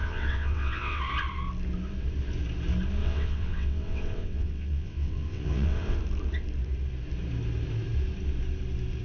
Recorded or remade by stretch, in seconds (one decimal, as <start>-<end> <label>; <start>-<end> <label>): 0.0-1.0 remade; 1.0-3.0 recorded; 3.0-6.0 remade; 6.0-9.0 recorded